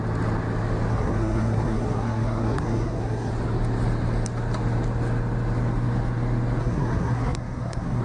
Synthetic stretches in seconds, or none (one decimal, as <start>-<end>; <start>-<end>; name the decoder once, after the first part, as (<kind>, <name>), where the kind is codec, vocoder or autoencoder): 0.9-3.3 (codec, SNAC); 6.6-8.0